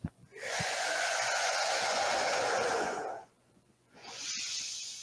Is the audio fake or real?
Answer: fake